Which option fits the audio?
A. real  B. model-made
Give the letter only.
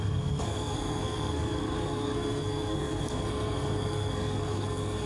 B